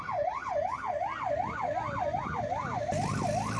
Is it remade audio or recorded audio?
recorded